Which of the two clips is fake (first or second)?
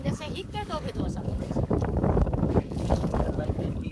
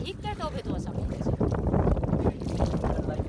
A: first